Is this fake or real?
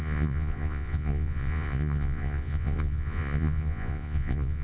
fake